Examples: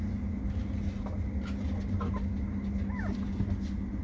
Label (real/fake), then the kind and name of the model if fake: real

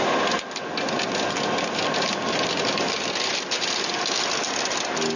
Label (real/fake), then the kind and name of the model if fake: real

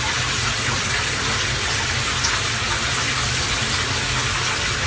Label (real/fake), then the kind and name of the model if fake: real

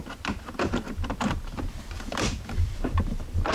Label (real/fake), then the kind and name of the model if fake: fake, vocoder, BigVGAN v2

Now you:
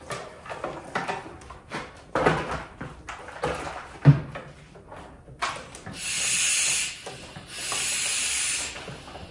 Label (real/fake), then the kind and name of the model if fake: real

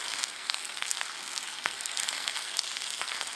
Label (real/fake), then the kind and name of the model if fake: fake, codec, SNAC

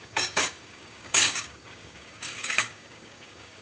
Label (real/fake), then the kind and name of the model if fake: fake, codec, DAC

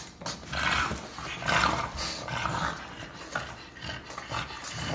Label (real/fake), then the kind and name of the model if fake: real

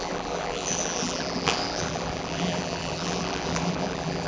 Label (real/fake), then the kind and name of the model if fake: fake, vocoder, BigVGAN v2